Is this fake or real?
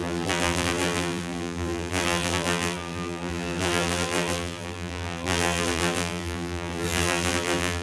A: fake